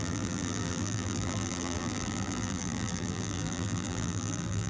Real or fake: fake